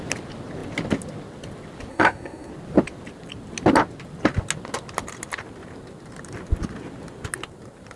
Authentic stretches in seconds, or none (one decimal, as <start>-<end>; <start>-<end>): 0.0-1.9; 2.5-8.0